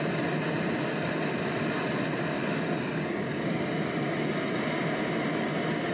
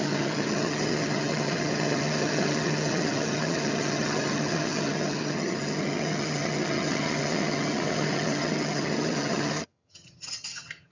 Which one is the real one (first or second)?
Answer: first